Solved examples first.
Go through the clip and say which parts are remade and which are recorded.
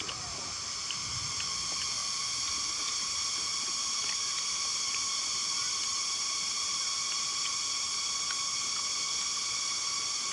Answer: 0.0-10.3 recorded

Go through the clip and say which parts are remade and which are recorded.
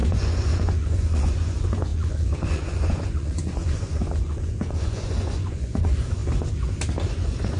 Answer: 0.0-6.2 remade; 6.2-7.1 recorded; 7.1-7.6 remade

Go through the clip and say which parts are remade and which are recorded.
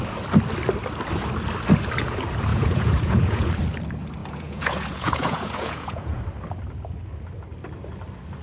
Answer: 0.0-2.5 recorded; 2.5-3.5 remade; 3.5-4.2 recorded; 4.2-6.2 remade; 6.2-8.4 recorded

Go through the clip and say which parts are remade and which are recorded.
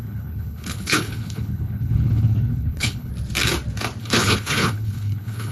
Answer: 0.0-3.1 remade; 3.1-4.0 recorded; 4.0-5.5 remade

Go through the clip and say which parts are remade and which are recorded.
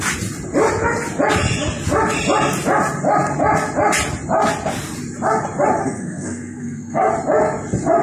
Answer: 0.0-5.8 recorded; 5.8-7.1 remade; 7.1-8.0 recorded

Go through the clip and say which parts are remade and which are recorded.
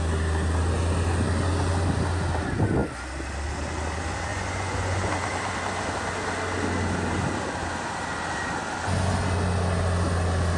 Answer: 0.0-4.3 recorded; 4.3-5.1 remade; 5.1-10.6 recorded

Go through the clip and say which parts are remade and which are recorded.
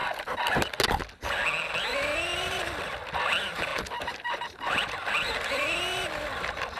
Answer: 0.0-6.8 recorded